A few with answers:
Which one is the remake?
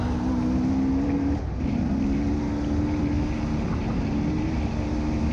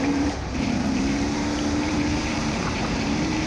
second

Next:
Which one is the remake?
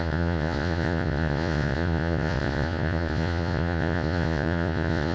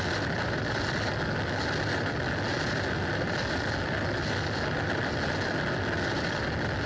first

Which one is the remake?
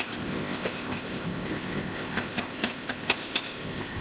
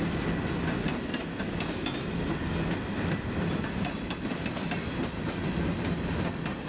first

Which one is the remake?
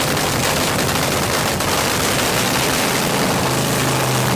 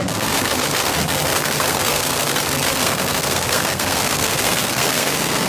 second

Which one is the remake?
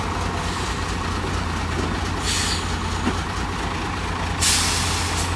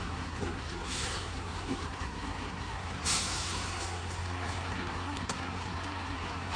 second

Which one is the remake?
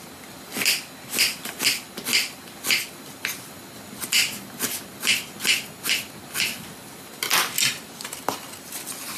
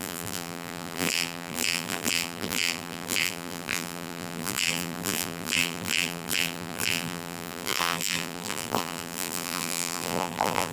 second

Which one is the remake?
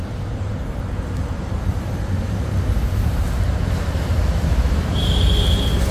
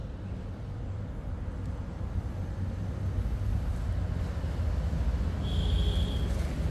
first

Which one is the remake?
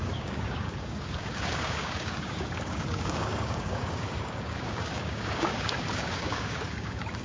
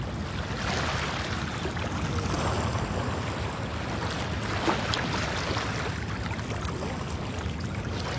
first